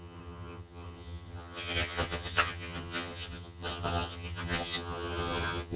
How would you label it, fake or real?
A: fake